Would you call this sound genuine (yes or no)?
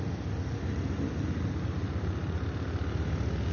yes